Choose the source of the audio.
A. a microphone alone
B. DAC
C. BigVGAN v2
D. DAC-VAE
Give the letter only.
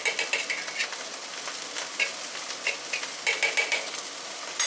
A